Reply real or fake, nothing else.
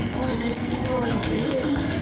fake